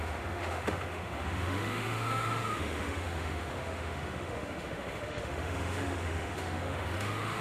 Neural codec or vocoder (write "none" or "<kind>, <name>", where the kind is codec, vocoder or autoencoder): autoencoder, DAC-VAE